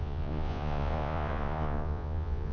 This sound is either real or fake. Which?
fake